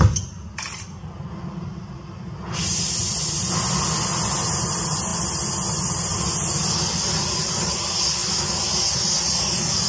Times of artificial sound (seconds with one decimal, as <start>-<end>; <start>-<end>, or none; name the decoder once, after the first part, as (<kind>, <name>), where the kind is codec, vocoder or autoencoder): none